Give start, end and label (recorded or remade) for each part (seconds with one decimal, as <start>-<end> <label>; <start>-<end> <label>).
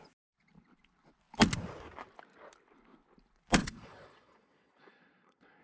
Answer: 0.0-3.6 recorded; 3.6-5.6 remade